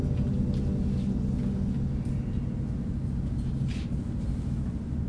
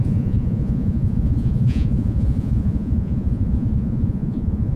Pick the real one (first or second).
first